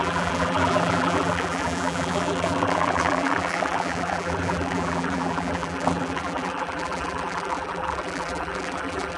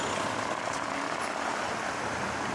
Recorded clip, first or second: second